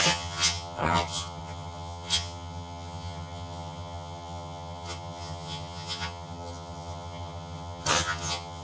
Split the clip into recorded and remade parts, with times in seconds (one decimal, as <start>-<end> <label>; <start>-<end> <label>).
0.0-8.6 remade